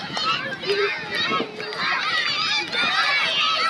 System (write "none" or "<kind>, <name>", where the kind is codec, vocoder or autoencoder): none